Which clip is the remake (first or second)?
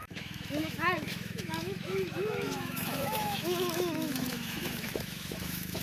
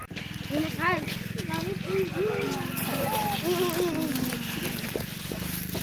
first